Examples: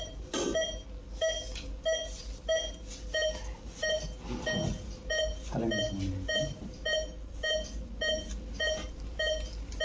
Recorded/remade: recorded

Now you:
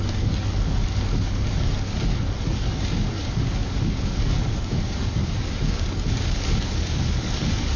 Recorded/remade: remade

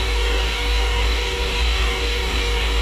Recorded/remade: remade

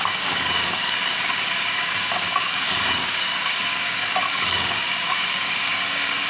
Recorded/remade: remade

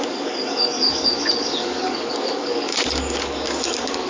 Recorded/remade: remade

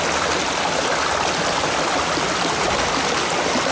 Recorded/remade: recorded